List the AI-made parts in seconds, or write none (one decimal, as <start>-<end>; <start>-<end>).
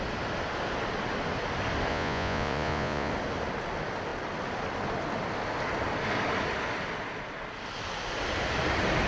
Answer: 1.9-3.1